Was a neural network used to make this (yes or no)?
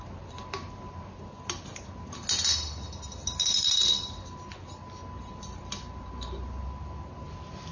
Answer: no